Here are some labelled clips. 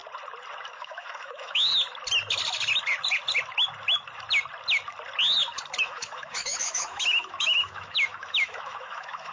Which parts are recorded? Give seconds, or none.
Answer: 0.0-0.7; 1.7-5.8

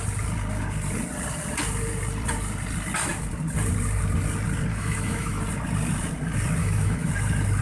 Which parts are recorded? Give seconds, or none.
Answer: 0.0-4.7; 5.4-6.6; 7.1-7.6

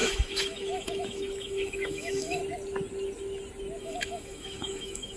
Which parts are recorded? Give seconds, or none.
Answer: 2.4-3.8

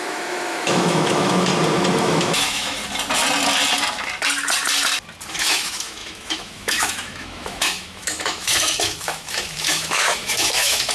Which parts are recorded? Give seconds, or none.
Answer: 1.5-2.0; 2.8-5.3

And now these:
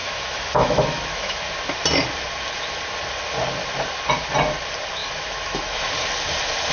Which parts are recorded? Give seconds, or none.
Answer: 1.4-5.0; 5.9-6.7

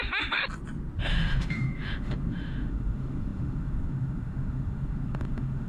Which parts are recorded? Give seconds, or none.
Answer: 0.4-1.0

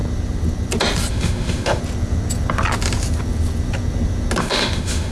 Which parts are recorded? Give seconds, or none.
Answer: 0.0-1.1; 1.8-4.4

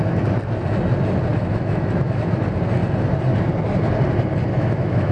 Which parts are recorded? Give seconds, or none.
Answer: 0.0-1.3; 2.4-4.5